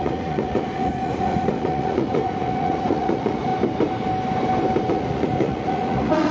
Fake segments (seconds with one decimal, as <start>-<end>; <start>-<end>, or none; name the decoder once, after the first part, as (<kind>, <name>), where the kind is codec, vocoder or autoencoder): 0.0-3.5 (vocoder, Vocos); 4.9-6.3